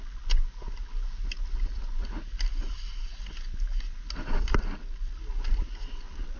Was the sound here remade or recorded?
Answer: recorded